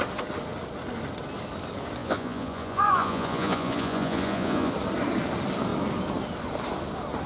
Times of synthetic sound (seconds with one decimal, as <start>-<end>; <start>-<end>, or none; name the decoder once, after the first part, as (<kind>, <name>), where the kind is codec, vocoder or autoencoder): 2.0-4.7 (vocoder, Vocos)